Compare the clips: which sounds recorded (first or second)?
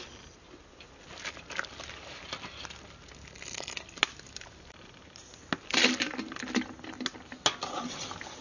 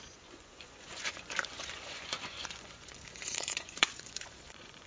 first